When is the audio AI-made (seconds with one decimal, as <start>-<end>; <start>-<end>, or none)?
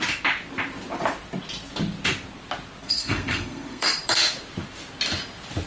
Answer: 2.8-3.9